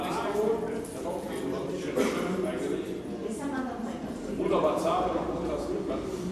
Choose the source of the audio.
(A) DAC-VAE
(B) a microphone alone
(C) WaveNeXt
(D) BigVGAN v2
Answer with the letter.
D